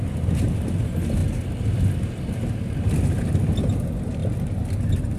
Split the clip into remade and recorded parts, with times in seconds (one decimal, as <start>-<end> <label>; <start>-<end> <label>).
0.0-5.2 recorded